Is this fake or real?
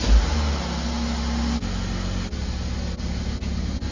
real